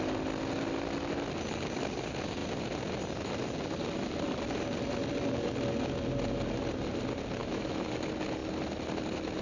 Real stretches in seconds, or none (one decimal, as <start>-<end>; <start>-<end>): 0.0-7.4; 7.9-9.4